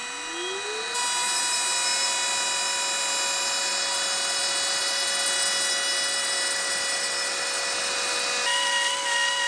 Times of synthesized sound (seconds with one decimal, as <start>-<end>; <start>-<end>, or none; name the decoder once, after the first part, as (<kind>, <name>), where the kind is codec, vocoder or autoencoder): none

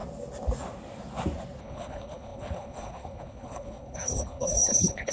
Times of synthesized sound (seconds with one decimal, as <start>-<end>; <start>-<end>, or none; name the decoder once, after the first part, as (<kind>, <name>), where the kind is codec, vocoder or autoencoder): 1.6-5.1 (codec, HILCodec)

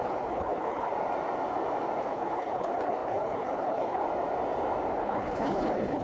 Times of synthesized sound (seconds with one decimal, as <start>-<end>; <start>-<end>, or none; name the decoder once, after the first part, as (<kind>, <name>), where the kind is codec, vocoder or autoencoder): 0.0-0.9 (codec, HILCodec); 2.0-4.0; 5.0-6.0